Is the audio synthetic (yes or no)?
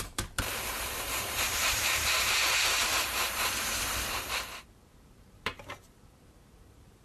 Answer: yes